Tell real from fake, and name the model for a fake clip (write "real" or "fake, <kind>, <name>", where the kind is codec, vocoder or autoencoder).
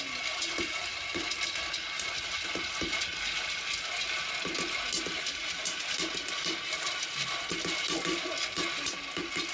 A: real